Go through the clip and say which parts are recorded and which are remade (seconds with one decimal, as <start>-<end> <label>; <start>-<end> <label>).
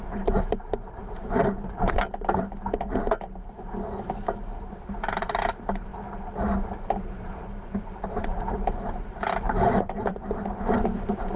0.0-5.9 remade; 5.9-7.0 recorded; 7.0-11.4 remade